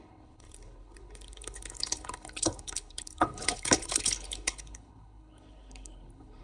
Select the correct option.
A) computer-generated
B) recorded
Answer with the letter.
A